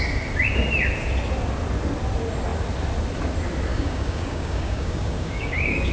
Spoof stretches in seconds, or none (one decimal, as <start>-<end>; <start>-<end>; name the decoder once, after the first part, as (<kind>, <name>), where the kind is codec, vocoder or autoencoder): 3.7-5.9 (codec, DAC)